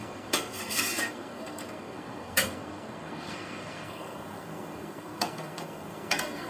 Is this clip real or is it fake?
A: fake